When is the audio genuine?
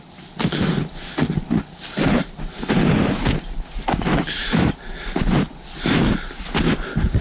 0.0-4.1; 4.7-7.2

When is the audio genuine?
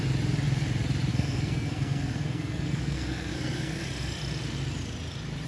0.0-1.1; 3.8-5.5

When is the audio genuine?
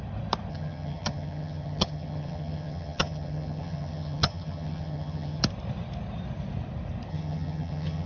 0.0-0.5; 5.4-7.1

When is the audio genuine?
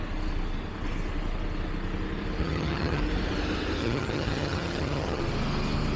0.0-2.4; 3.0-3.8; 5.2-6.0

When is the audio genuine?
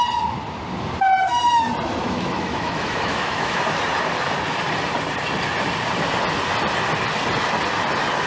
0.0-2.0; 3.6-8.3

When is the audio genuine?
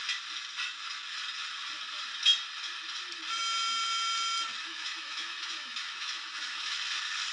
0.0-4.6; 6.8-7.3